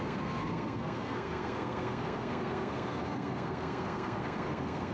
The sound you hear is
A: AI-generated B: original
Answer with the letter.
A